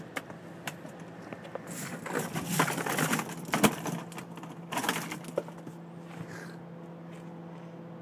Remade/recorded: recorded